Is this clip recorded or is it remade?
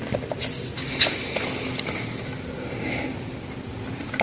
recorded